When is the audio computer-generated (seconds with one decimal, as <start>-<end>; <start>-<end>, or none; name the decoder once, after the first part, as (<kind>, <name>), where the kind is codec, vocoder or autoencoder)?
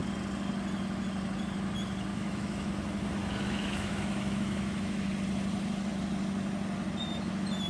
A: 2.1-2.7 (autoencoder, DAC-VAE); 3.2-5.1